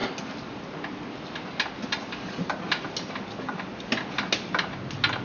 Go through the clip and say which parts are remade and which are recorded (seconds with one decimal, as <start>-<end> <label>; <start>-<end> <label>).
0.0-5.2 recorded